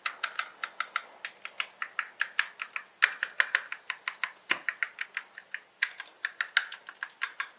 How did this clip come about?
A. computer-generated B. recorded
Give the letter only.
B